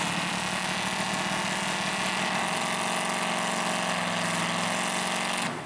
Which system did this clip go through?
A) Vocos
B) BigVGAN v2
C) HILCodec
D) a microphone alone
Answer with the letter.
D